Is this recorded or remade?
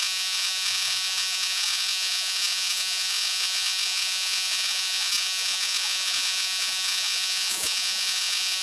remade